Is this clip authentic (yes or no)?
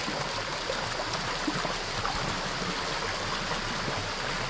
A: yes